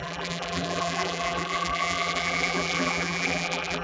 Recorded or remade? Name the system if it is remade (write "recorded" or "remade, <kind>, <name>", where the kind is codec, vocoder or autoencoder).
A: remade, vocoder, BigVGAN v2